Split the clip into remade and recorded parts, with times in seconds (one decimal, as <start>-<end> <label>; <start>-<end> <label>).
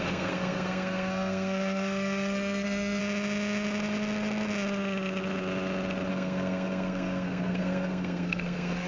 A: 0.0-3.0 remade; 3.0-6.1 recorded; 6.1-8.9 remade